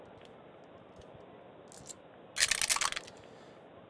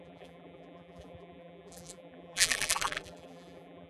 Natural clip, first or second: first